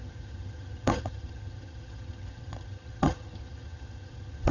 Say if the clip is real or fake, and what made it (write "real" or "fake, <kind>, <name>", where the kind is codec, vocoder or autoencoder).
fake, vocoder, HiFi-GAN